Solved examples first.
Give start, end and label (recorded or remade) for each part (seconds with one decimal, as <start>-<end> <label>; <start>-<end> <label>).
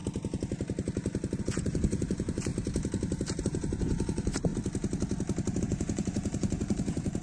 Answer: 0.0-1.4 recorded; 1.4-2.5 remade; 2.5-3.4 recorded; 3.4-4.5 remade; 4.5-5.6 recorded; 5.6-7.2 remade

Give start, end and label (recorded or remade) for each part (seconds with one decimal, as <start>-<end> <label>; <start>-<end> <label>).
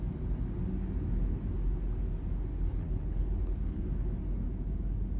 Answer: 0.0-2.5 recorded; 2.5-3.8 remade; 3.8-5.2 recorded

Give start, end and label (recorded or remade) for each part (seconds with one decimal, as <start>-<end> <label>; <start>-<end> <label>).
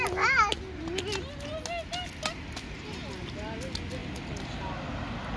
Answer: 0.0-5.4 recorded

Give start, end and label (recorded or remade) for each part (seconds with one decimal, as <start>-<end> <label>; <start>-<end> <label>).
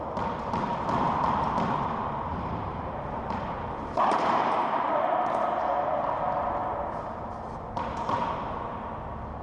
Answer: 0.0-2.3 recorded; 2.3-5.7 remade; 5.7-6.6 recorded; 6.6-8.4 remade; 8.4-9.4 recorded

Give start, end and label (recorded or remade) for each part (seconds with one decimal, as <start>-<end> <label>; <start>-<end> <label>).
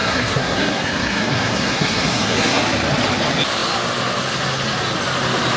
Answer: 0.0-2.6 remade; 2.6-5.6 recorded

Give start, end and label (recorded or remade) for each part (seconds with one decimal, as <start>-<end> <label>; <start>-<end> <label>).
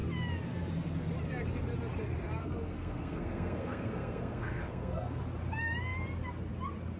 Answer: 0.0-2.4 recorded; 2.4-5.2 remade; 5.2-7.0 recorded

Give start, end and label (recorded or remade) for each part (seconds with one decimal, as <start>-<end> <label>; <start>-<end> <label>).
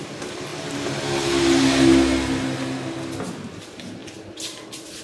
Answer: 0.0-5.0 recorded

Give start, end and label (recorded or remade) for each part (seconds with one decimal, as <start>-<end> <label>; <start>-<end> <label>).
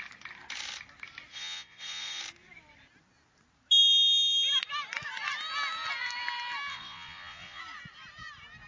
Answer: 0.0-1.3 recorded; 1.3-2.2 remade; 2.2-6.7 recorded; 6.7-7.6 remade; 7.6-8.7 recorded